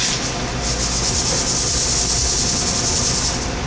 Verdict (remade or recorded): recorded